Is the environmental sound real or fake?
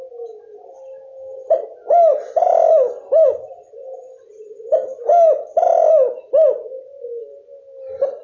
real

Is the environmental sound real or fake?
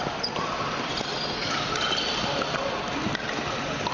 real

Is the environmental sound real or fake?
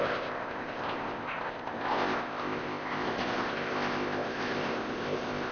fake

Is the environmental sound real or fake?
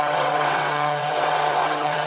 fake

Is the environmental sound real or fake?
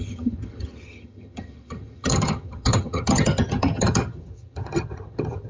fake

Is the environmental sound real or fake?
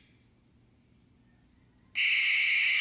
real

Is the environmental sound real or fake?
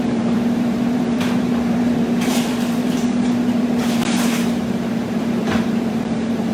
fake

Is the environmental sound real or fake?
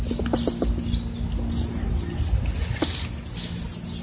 real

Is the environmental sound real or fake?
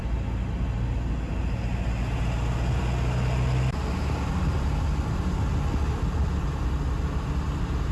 real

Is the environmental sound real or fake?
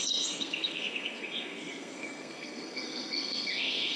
fake